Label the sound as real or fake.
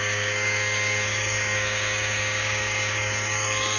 fake